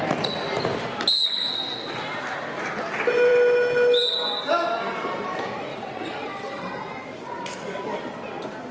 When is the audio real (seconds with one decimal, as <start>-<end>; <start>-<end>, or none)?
0.0-5.7; 6.7-8.7